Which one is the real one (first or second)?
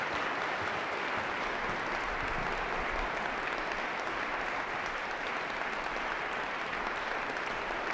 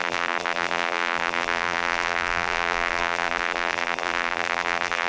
first